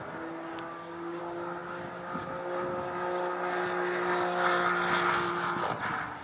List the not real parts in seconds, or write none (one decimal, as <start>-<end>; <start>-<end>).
0.5-1.2